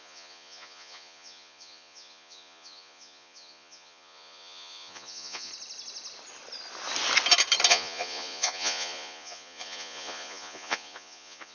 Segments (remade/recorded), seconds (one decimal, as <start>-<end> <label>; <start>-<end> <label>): 0.0-5.5 remade; 5.5-7.7 recorded; 7.7-11.5 remade